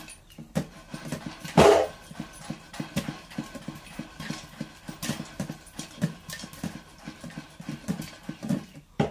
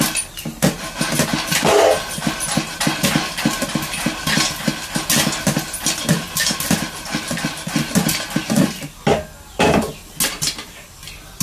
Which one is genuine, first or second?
second